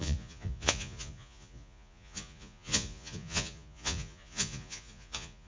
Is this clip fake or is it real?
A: fake